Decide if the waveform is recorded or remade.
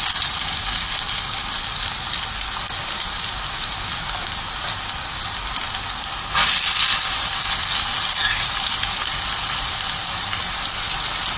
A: recorded